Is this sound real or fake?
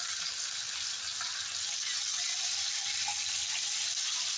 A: real